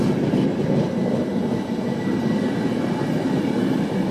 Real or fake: real